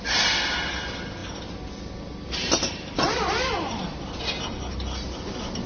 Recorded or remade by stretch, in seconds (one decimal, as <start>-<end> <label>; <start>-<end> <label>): 0.0-5.7 recorded